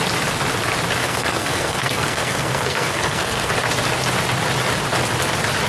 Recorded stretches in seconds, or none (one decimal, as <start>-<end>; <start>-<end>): 0.0-1.0; 3.5-5.7